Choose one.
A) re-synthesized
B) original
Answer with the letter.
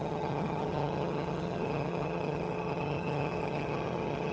A